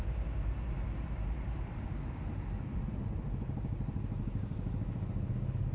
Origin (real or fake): real